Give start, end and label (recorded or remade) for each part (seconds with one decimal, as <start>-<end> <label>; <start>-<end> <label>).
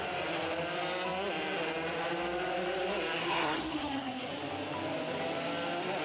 0.0-3.2 recorded; 3.2-4.3 remade; 4.3-6.0 recorded